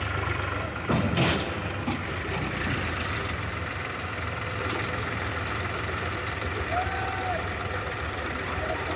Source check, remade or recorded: remade